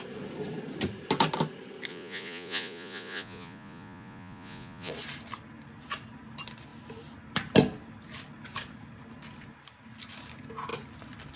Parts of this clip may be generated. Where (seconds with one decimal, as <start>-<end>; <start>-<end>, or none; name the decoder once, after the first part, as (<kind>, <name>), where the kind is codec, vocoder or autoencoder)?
1.9-4.9 (vocoder, Vocos)